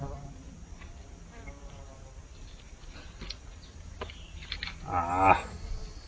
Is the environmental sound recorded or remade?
recorded